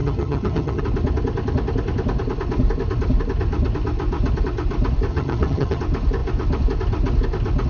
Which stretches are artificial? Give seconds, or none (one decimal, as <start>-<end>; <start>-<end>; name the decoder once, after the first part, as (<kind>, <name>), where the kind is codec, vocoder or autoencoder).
0.0-0.8 (vocoder, HiFi-GAN); 5.1-5.8

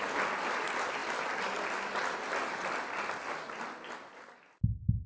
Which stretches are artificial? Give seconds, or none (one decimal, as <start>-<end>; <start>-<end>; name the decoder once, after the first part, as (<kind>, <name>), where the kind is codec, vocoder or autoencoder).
none

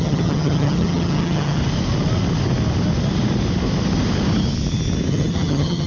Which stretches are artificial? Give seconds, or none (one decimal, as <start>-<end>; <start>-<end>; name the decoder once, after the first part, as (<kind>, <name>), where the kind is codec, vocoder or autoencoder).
0.0-1.6 (vocoder, HiFi-GAN); 5.1-5.9